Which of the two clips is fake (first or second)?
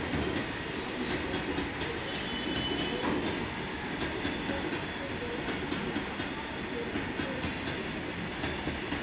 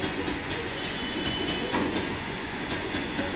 second